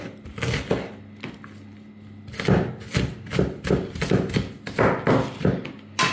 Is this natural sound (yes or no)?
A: yes